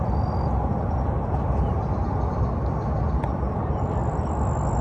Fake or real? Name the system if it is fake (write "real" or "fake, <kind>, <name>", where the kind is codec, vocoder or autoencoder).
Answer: real